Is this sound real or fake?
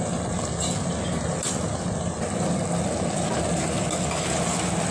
real